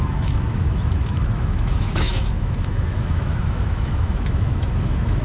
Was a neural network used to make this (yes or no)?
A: yes